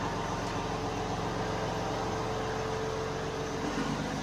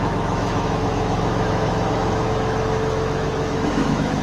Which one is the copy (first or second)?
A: second